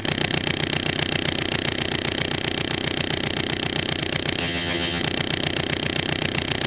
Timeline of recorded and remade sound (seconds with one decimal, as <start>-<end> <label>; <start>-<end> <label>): 0.0-4.4 recorded; 4.4-5.0 remade; 5.0-6.7 recorded